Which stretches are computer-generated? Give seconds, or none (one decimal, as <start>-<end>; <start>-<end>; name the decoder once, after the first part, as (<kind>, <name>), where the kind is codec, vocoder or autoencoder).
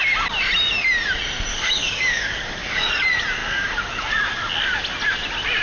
1.5-2.9 (codec, DAC); 3.4-3.9